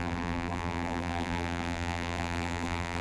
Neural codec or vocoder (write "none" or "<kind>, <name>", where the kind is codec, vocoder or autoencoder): vocoder, BigVGAN v2